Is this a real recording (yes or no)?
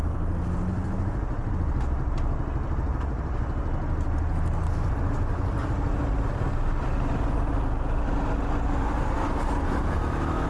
yes